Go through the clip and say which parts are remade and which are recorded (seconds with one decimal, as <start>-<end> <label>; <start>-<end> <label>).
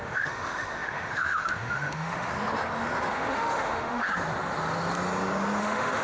0.0-2.3 remade; 2.3-3.1 recorded; 3.1-4.1 remade; 4.1-5.6 recorded; 5.6-6.0 remade